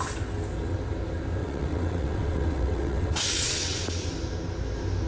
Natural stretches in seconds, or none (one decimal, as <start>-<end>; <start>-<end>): 0.0-1.4; 4.1-5.1